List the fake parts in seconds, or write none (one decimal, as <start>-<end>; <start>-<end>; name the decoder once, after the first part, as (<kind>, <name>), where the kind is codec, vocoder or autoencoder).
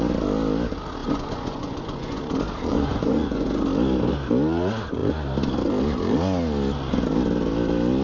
1.0-2.2 (vocoder, Vocos); 2.7-3.6